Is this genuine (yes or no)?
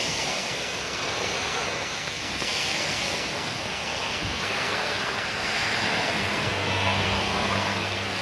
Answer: no